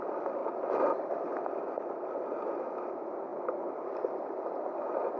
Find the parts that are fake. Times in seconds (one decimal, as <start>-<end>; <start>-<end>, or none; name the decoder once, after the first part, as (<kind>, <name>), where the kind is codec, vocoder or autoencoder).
0.0-0.4 (vocoder, BigVGAN v2); 2.8-5.2